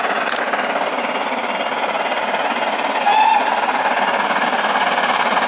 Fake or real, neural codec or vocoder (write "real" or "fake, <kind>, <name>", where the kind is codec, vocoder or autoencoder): real